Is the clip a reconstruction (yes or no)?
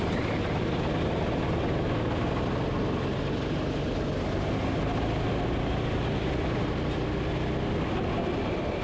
no